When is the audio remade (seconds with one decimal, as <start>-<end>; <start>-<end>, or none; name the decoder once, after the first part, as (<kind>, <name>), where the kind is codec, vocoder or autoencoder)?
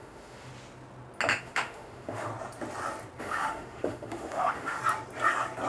0.0-0.5 (autoencoder, DAC-VAE); 1.4-2.3; 3.2-4.8